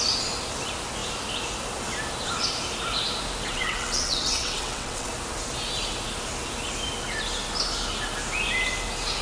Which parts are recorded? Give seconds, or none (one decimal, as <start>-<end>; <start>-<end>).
0.0-3.5; 5.1-9.2